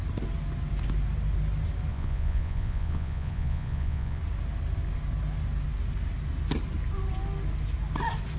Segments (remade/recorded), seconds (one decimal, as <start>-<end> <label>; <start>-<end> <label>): 0.0-1.9 recorded; 1.9-4.2 remade; 4.2-8.4 recorded